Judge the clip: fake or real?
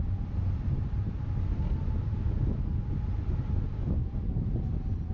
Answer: real